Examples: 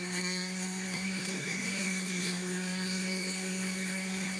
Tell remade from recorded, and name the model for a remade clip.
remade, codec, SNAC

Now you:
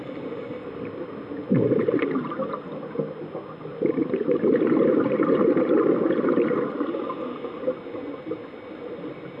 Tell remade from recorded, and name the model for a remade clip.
recorded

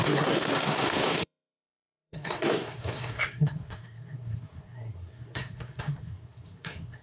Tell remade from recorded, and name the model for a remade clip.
remade, codec, SNAC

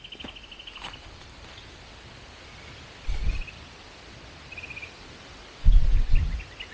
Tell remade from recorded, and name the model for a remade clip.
recorded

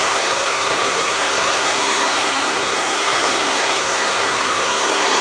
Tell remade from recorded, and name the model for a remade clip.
remade, codec, SNAC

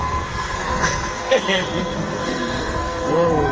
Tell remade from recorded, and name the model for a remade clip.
remade, codec, SNAC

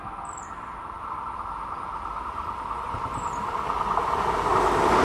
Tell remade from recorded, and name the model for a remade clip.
recorded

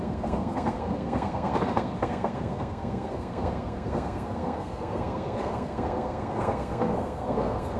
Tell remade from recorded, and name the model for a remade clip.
remade, codec, SNAC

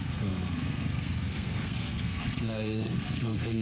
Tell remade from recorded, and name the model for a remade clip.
remade, codec, SNAC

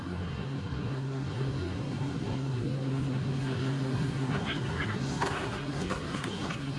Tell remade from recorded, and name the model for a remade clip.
remade, codec, SNAC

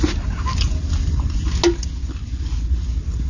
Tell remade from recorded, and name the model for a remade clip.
recorded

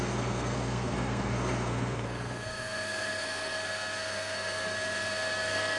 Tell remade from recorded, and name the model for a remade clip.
remade, codec, SNAC